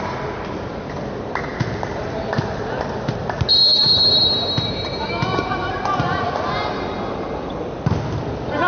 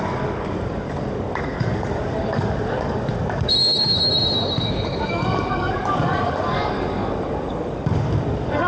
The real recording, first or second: first